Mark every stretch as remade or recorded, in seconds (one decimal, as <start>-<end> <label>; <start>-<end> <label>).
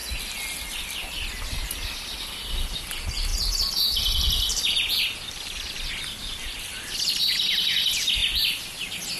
0.0-9.2 recorded